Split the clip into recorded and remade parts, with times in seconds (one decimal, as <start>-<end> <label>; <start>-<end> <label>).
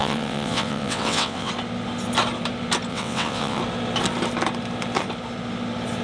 0.0-1.5 remade; 1.5-2.9 recorded; 2.9-3.6 remade; 3.6-6.0 recorded